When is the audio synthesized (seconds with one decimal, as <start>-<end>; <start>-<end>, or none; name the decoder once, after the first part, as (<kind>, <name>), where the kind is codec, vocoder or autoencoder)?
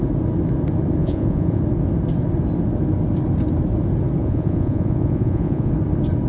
1.0-1.6 (vocoder, Vocos); 4.2-5.7